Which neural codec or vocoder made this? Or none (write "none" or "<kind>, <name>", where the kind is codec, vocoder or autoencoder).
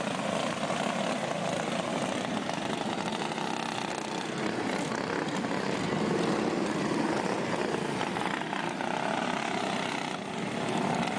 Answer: none